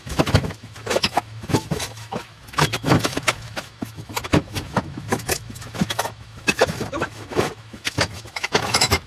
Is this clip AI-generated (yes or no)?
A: yes